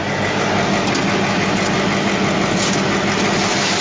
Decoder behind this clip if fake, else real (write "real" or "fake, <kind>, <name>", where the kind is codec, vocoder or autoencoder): real